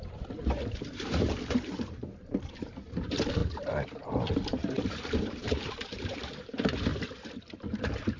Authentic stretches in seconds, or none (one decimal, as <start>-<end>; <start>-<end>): 3.4-4.3; 6.9-7.7